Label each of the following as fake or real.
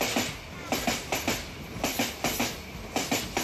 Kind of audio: real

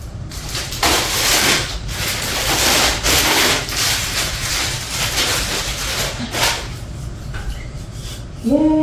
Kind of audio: fake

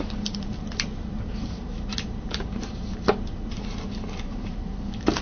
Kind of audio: fake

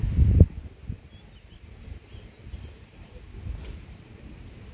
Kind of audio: real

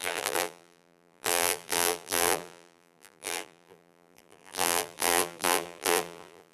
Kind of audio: fake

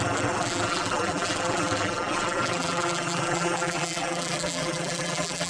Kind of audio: fake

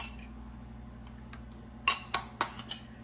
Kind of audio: real